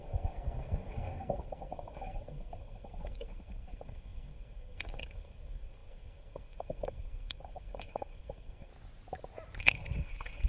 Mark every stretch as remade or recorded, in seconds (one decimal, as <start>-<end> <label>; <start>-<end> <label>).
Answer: 0.0-8.7 remade; 8.7-9.6 recorded; 9.6-10.5 remade